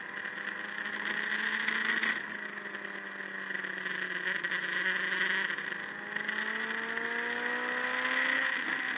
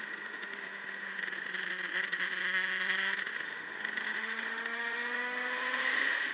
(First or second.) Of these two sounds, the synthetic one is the second